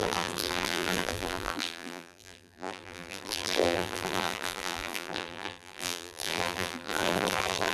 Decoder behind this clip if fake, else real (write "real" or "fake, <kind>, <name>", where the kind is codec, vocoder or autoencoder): fake, vocoder, BigVGAN v2